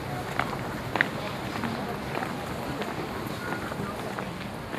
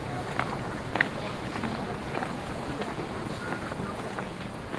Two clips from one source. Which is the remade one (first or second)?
second